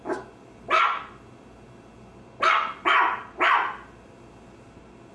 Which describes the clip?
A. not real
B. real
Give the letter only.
B